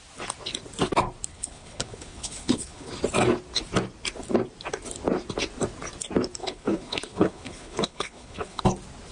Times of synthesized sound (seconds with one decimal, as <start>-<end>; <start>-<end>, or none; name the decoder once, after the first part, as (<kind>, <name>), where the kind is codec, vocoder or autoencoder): 1.3-2.9 (codec, HILCodec); 6.4-8.6